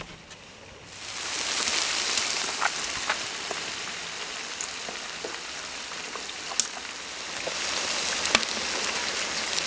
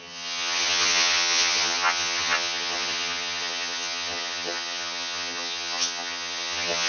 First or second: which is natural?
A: first